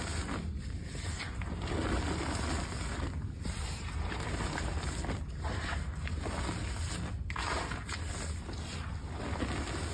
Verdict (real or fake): real